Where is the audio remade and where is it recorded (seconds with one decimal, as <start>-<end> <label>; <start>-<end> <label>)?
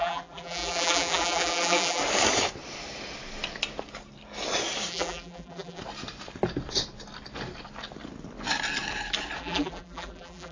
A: 0.0-2.0 remade; 2.0-4.9 recorded; 4.9-5.8 remade; 5.8-9.4 recorded; 9.4-10.5 remade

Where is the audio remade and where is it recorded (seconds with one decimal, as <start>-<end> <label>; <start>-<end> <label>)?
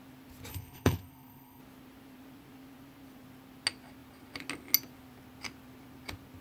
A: 0.0-0.5 recorded; 0.5-1.6 remade; 1.6-6.4 recorded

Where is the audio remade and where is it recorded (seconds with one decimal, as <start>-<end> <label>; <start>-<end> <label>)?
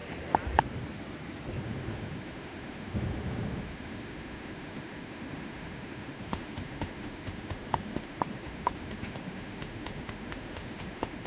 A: 0.0-1.6 recorded; 1.6-11.3 remade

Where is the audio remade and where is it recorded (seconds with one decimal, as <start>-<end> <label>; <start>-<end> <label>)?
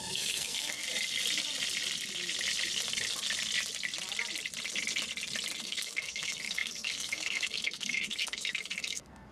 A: 0.0-0.8 remade; 0.8-5.6 recorded; 5.6-9.3 remade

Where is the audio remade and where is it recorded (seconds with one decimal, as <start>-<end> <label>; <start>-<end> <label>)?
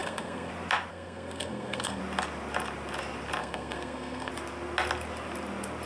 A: 0.0-0.5 remade; 0.5-0.9 recorded; 0.9-2.0 remade; 2.0-3.4 recorded; 3.4-4.3 remade; 4.3-5.9 recorded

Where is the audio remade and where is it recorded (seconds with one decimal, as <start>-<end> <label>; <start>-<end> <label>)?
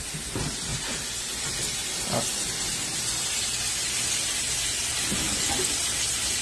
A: 0.0-0.7 recorded; 0.7-1.2 remade; 1.2-1.8 recorded; 1.8-2.3 remade; 2.3-6.4 recorded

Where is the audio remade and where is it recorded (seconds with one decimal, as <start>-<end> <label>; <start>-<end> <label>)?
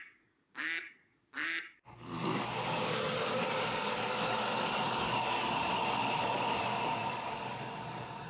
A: 0.0-8.3 remade